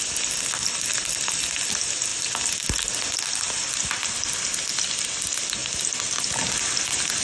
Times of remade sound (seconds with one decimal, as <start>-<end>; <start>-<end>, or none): none